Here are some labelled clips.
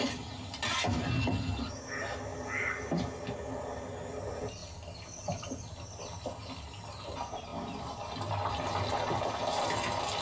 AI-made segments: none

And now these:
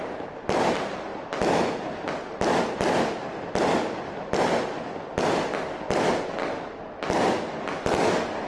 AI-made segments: none

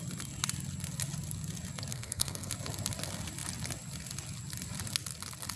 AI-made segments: 1.9-2.5

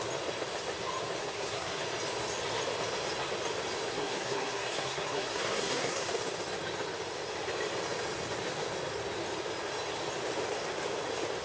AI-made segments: 1.2-1.8; 3.9-6.1

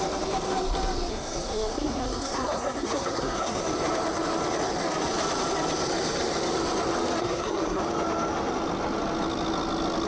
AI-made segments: 1.1-3.6; 7.2-7.8

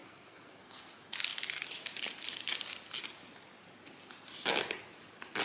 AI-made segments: 0.0-0.9

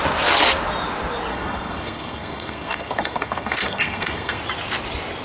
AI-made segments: 1.3-4.4